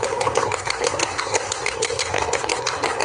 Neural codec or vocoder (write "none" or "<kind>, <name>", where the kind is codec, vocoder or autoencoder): codec, SNAC